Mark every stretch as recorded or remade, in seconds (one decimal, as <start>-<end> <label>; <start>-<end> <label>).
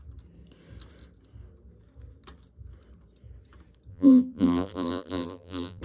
0.0-3.9 recorded; 3.9-5.8 remade